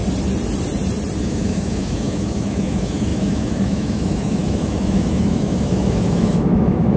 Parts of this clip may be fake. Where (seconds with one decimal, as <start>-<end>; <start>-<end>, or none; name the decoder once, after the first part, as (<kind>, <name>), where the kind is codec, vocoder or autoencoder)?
1.2-7.0 (autoencoder, DAC-VAE)

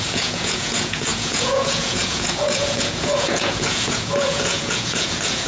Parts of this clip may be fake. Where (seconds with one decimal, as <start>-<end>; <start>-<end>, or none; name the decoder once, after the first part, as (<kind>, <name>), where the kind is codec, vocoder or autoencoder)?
0.0-5.5 (vocoder, Vocos)

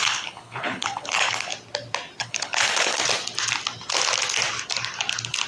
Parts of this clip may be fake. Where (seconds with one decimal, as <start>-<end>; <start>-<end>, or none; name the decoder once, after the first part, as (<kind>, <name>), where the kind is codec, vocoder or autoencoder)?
0.0-1.5 (codec, HILCodec); 2.2-3.0

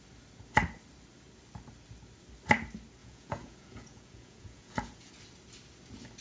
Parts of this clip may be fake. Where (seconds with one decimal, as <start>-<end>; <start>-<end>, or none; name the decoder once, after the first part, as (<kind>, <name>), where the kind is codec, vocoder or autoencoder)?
3.0-5.1 (vocoder, Vocos)

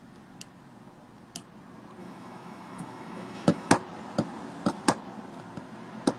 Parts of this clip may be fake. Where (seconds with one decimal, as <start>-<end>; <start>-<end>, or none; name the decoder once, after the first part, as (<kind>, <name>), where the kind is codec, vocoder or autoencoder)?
2.0-3.7 (autoencoder, DAC-VAE)

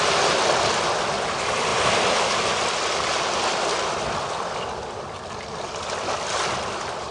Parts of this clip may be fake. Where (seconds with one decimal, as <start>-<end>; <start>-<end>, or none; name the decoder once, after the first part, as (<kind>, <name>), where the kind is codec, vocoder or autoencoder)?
none

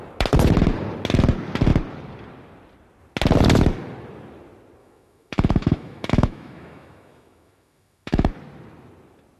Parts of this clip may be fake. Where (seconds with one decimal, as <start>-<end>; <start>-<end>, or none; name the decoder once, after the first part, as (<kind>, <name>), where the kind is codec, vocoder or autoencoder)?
4.8-8.3 (autoencoder, DAC-VAE)

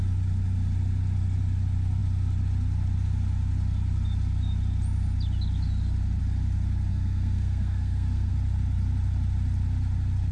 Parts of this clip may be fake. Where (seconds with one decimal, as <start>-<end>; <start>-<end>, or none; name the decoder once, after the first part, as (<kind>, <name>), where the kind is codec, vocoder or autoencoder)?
6.9-8.3 (codec, SNAC)